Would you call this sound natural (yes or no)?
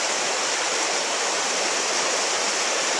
no